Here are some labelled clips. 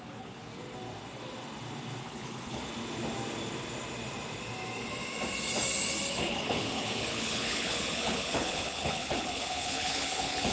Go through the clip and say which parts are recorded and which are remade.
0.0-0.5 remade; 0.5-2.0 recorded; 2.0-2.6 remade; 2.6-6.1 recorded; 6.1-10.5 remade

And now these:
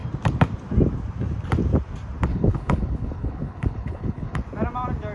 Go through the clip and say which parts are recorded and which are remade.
0.0-2.3 recorded; 2.3-4.4 remade; 4.4-5.1 recorded

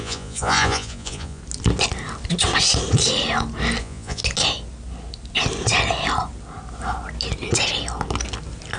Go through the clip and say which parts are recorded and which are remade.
0.0-1.4 remade; 1.4-3.8 recorded; 3.8-4.2 remade; 4.2-8.8 recorded

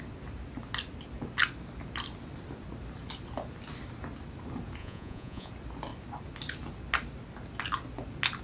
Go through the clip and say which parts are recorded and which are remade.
0.0-4.8 recorded; 4.8-5.5 remade; 5.5-8.4 recorded

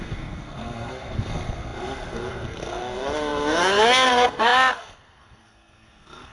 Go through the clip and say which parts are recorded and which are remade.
0.0-6.3 remade